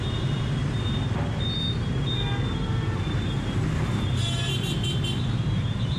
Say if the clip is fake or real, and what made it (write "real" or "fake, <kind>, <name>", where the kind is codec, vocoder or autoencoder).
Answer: real